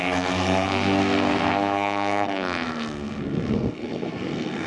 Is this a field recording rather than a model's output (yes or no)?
no